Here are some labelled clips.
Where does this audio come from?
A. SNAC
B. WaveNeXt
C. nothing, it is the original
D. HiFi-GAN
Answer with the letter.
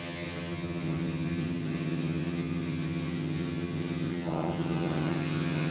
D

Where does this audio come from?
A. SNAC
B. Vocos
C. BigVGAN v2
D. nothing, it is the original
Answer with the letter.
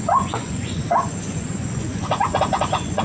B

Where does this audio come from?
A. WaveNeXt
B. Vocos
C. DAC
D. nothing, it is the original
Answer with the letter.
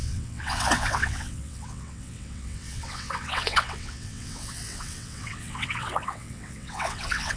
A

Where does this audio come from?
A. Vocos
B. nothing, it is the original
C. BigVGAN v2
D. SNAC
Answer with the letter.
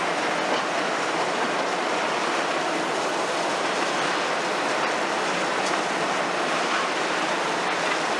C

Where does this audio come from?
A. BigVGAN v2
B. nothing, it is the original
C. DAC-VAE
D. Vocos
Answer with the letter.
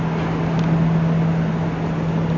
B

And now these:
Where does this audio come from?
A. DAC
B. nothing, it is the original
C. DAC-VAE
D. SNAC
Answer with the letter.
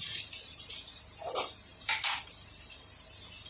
B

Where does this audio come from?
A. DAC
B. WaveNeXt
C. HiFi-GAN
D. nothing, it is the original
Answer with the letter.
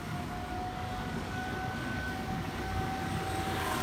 A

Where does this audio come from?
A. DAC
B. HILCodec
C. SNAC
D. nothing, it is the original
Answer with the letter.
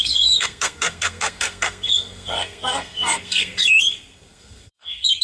C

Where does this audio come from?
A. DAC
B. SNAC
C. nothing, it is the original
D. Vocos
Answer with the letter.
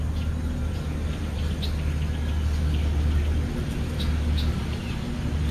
C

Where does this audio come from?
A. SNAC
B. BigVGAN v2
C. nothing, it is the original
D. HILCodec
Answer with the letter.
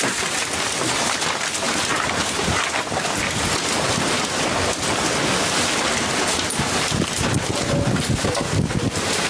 C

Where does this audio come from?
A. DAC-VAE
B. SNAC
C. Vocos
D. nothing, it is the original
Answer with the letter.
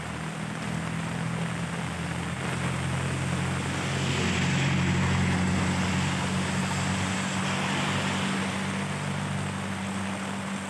D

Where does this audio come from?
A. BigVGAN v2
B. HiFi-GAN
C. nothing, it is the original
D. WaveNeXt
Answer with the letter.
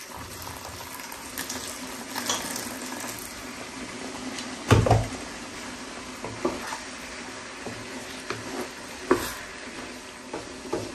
C